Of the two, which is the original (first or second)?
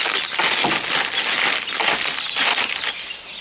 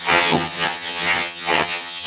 first